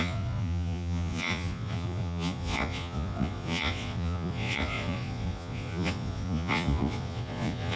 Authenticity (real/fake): fake